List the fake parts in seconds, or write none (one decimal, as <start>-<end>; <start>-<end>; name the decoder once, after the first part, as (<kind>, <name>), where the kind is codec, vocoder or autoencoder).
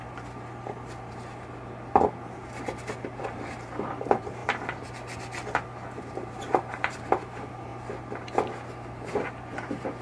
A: 3.2-4.4 (vocoder, BigVGAN v2); 6.0-7.7; 9.5-10.0